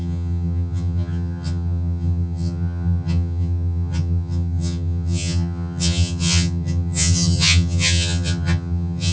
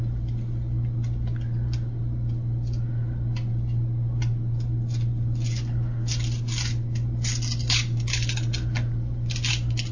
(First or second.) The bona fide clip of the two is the second